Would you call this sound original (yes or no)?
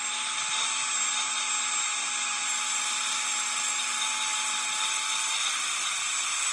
yes